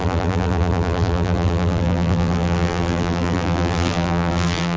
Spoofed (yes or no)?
yes